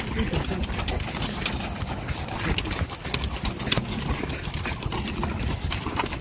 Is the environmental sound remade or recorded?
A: recorded